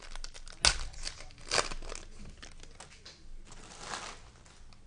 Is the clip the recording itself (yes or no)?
yes